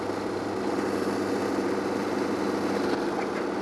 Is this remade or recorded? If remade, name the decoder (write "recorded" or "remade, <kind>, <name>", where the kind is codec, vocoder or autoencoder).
recorded